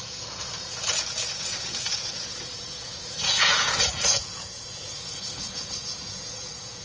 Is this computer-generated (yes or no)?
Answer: yes